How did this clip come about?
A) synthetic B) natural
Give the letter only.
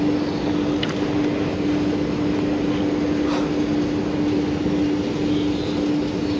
B